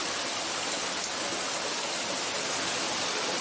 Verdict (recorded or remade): recorded